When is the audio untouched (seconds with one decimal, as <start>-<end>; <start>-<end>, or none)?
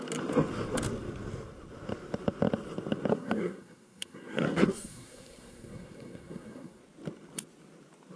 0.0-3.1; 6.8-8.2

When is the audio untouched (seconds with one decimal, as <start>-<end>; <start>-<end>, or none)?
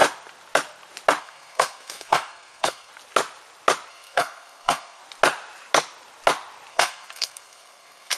0.0-1.2; 2.9-3.9; 5.0-6.7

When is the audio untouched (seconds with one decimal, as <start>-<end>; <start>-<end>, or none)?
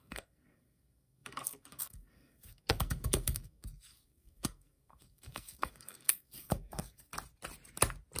7.1-8.2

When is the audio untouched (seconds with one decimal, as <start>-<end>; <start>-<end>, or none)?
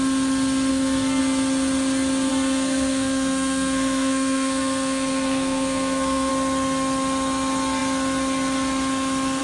0.0-0.7; 1.2-2.3; 6.3-9.4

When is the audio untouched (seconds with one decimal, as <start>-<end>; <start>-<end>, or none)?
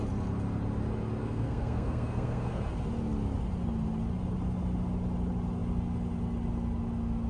0.0-1.2; 2.6-7.3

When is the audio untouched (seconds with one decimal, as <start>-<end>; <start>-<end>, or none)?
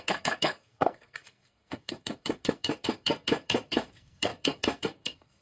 none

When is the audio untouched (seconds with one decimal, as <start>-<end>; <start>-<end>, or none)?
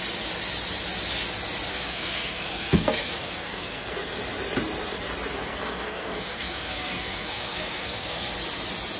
0.0-1.7; 4.1-5.5; 8.3-9.0